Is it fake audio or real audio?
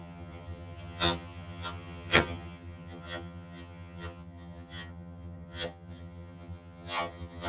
fake